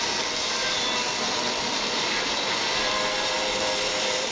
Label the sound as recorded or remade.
remade